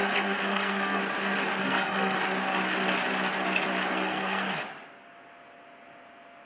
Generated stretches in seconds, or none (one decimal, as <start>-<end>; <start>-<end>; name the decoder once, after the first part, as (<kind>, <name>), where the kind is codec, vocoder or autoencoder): 0.0-1.0 (codec, SNAC); 1.6-2.2; 3.9-4.5